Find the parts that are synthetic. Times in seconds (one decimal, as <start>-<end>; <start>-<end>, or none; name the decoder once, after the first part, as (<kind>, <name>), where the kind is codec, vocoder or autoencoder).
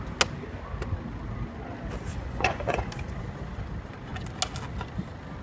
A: 2.1-2.9 (vocoder, Vocos)